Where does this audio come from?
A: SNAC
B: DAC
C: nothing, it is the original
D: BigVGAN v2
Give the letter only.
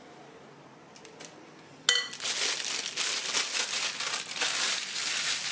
C